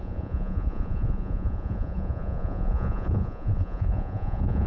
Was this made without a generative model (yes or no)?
no